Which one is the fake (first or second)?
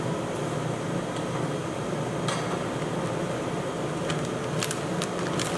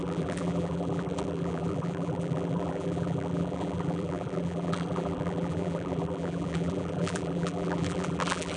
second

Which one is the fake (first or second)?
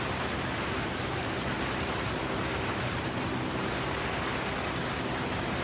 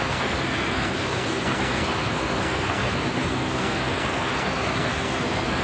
second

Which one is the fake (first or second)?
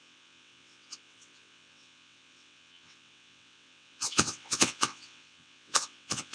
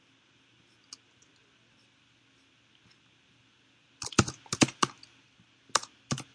first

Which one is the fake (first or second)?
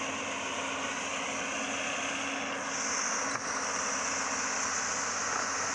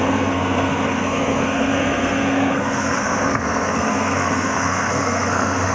second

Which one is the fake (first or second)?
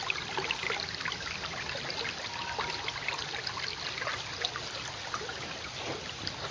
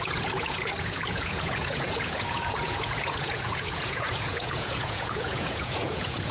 second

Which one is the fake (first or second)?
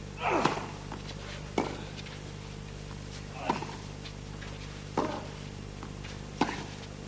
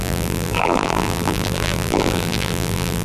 second